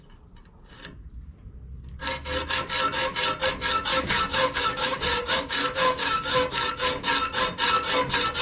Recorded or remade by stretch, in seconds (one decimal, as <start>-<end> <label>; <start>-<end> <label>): 0.0-3.9 recorded; 3.9-6.6 remade; 6.6-8.4 recorded